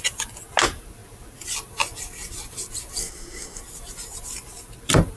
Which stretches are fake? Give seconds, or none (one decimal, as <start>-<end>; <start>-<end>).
3.0-3.6